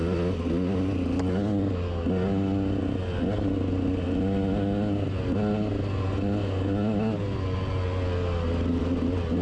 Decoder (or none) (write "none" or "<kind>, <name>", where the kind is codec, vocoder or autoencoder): none